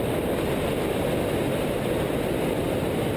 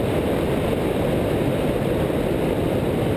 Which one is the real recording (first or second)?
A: first